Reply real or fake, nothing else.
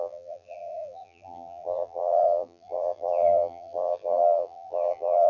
fake